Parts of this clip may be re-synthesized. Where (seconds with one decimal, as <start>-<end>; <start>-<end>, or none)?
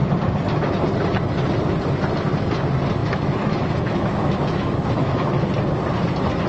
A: 3.0-5.5